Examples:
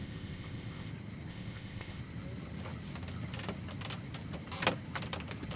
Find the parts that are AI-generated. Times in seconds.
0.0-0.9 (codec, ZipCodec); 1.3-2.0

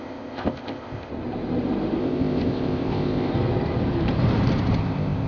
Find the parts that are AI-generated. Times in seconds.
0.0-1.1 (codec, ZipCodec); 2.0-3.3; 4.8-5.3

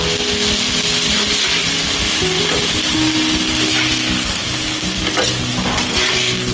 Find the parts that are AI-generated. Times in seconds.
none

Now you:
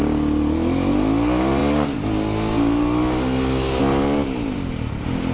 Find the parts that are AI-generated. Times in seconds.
none